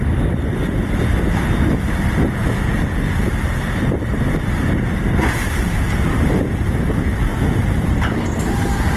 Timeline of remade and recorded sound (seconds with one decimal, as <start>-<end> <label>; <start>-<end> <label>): 0.0-5.4 recorded; 5.4-6.2 remade; 6.2-7.3 recorded; 7.3-8.3 remade; 8.3-9.0 recorded